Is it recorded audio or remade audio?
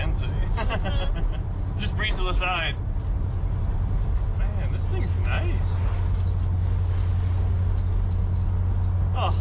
recorded